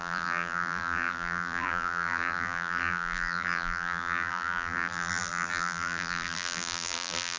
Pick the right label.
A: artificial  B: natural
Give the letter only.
A